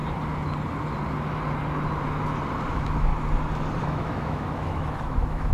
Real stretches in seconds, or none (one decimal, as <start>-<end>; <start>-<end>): 0.0-2.7; 3.1-3.8